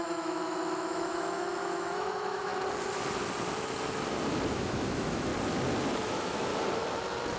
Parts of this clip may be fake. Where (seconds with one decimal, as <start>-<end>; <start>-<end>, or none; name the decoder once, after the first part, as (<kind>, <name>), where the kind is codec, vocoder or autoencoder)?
0.0-2.5 (autoencoder, DAC-VAE); 4.5-5.3; 6.1-6.5